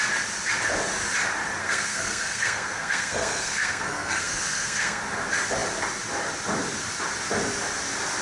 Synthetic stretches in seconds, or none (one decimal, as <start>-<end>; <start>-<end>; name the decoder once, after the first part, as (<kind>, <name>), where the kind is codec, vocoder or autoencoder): 1.6-5.0 (codec, SNAC)